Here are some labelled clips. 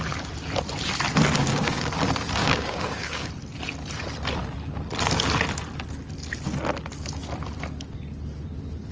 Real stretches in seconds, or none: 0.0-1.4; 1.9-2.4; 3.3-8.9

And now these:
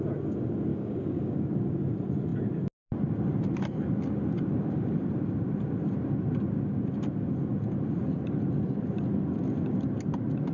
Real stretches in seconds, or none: 0.0-0.7; 1.4-10.5

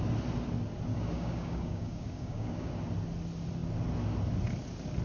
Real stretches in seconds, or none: 0.0-0.9; 2.7-5.0

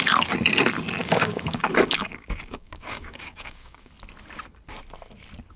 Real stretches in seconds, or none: 0.0-1.0; 3.9-5.6